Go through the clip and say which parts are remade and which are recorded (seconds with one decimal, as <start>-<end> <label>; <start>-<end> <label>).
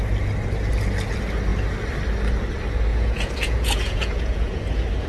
0.0-2.9 recorded; 2.9-4.6 remade; 4.6-5.1 recorded